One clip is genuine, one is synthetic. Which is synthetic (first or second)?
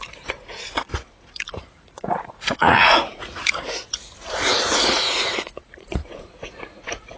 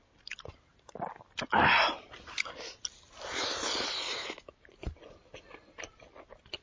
first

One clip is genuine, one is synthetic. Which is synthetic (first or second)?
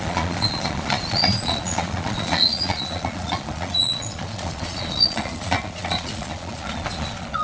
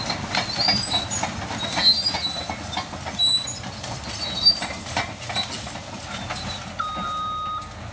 first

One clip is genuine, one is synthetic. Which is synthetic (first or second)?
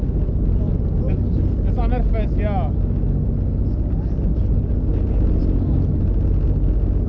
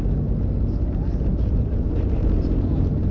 second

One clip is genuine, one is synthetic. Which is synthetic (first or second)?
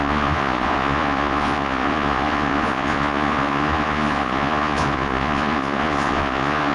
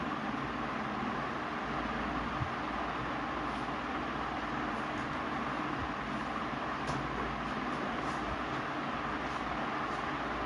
first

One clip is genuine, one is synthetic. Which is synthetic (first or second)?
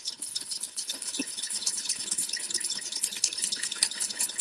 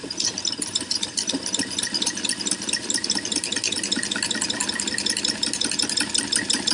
first